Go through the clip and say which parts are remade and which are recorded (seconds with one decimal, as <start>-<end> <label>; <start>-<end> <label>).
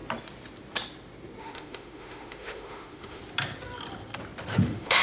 0.0-1.4 recorded; 1.4-3.2 remade; 3.2-4.5 recorded; 4.5-5.0 remade